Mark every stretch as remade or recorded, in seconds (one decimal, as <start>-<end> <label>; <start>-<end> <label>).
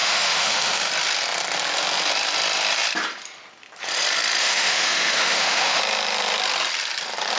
0.0-0.9 remade; 0.9-4.4 recorded; 4.4-5.8 remade; 5.8-7.4 recorded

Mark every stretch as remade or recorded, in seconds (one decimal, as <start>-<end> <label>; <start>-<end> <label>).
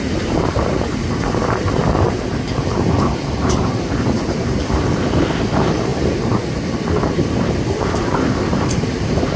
0.0-1.8 remade; 1.8-3.3 recorded; 3.3-5.9 remade; 5.9-7.1 recorded; 7.1-9.4 remade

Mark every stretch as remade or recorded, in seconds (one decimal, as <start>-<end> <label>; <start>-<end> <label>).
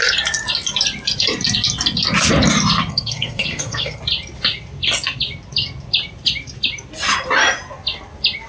0.0-2.9 recorded; 2.9-4.0 remade; 4.0-8.5 recorded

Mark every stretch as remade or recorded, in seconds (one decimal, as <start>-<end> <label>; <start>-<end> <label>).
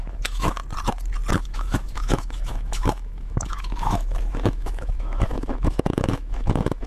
0.0-0.6 remade; 0.6-1.4 recorded; 1.4-6.9 remade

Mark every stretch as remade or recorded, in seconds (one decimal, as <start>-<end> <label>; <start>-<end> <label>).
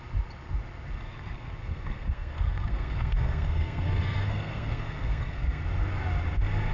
0.0-1.6 recorded; 1.6-5.6 remade; 5.6-6.7 recorded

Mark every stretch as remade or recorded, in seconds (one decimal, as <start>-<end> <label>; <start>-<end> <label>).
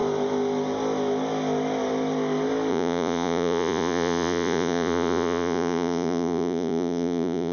0.0-2.7 recorded; 2.7-7.5 remade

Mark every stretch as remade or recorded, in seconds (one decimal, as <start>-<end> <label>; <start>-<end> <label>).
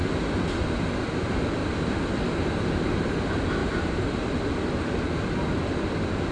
0.0-3.6 recorded; 3.6-4.3 remade; 4.3-6.3 recorded